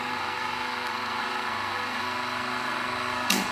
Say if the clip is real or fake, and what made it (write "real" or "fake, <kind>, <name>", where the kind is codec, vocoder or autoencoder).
fake, codec, SNAC